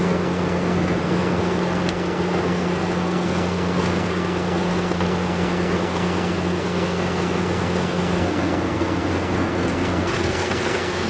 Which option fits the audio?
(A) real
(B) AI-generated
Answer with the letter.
B